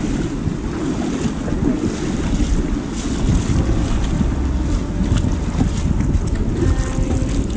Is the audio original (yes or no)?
yes